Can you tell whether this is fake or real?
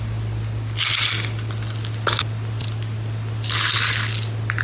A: real